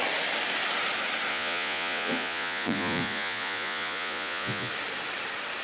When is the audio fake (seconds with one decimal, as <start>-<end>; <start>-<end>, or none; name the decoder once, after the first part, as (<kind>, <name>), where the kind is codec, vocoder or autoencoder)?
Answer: 1.3-4.7 (vocoder, Vocos)